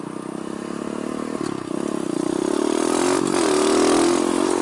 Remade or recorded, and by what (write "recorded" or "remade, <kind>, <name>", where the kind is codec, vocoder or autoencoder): recorded